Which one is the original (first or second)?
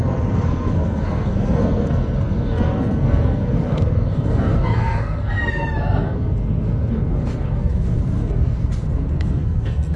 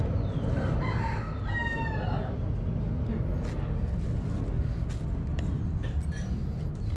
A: second